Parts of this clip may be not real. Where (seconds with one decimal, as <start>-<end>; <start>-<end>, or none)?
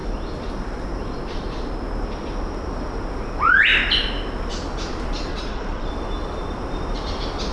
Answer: 5.3-5.9